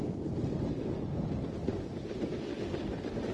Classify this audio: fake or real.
real